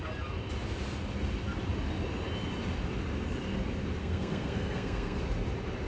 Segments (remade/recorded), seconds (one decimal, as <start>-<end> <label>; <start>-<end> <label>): 0.0-4.0 recorded; 4.0-5.2 remade; 5.2-5.9 recorded